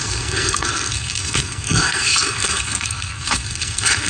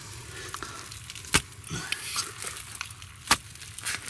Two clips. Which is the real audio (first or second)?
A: second